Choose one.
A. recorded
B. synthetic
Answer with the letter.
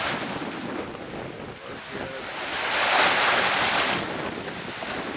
A